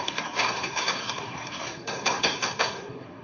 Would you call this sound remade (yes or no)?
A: yes